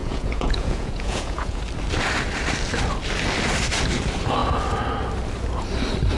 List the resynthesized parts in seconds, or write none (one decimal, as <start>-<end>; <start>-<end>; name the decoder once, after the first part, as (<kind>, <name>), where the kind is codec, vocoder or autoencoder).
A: 0.0-1.6 (vocoder, Vocos)